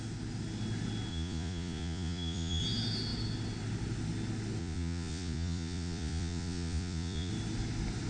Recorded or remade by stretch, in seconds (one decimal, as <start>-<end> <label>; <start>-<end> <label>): 0.0-1.1 recorded; 1.1-2.6 remade; 2.6-4.6 recorded; 4.6-7.3 remade; 7.3-8.1 recorded